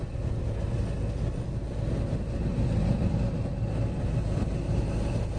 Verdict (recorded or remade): recorded